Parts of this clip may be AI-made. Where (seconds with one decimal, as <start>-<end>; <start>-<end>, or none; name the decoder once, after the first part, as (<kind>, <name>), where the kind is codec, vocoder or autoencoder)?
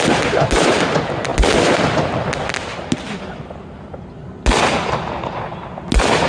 none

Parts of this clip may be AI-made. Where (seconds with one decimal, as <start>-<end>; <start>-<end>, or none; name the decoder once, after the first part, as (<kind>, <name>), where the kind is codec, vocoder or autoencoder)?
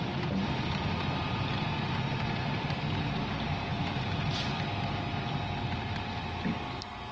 none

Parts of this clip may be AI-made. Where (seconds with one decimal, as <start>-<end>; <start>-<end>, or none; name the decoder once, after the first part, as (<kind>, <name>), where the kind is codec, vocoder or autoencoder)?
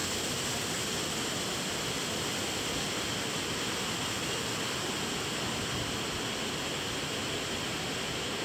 none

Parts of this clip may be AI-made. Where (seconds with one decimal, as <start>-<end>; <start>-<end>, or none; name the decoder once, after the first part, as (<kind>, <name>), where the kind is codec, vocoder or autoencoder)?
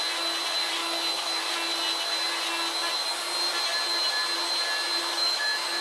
0.8-1.4 (autoencoder, DAC-VAE); 5.2-5.8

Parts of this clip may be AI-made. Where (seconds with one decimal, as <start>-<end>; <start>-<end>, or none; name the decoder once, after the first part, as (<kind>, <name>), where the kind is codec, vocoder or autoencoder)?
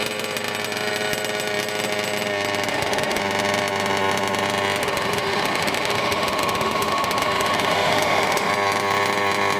2.7-3.2 (autoencoder, DAC-VAE); 4.8-8.5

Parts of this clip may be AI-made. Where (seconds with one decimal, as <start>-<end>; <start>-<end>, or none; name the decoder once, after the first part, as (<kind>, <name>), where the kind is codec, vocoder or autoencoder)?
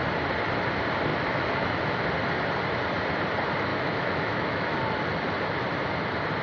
1.1-1.9 (autoencoder, DAC-VAE); 3.7-4.8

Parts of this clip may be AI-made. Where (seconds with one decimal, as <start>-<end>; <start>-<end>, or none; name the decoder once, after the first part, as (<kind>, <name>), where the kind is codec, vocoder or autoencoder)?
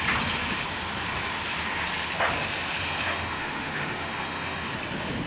2.8-4.7 (autoencoder, DAC-VAE)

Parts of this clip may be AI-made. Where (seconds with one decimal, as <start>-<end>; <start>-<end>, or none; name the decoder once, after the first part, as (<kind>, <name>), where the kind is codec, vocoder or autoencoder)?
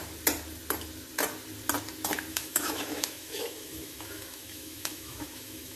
2.3-5.8 (autoencoder, DAC-VAE)